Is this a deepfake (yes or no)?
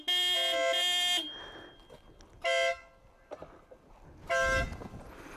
no